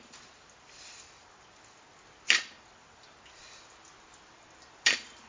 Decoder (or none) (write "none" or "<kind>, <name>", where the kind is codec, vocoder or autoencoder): none